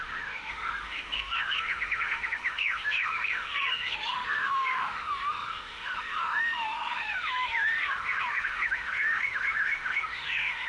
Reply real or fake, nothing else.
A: fake